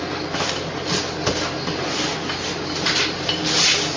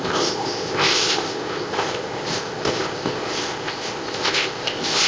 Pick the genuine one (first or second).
first